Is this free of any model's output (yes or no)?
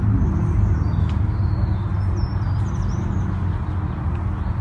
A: yes